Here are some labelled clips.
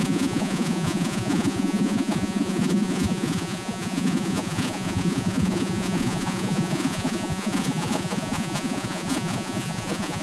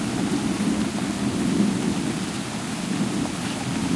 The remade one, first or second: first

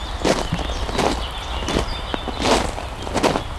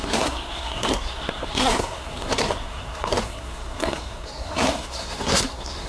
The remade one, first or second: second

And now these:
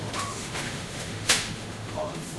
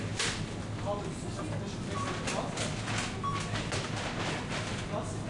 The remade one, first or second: first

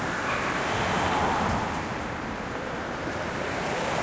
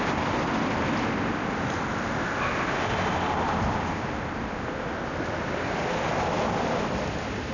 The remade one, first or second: first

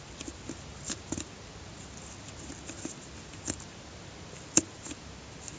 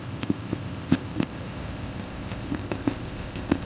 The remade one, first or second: second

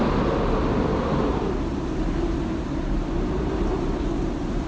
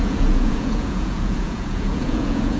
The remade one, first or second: second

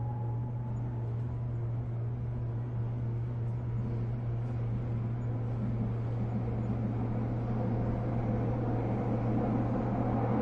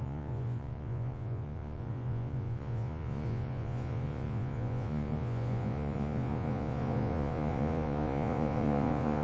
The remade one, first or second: second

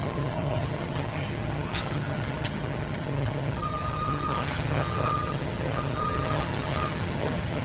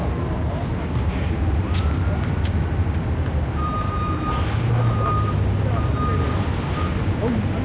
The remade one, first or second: first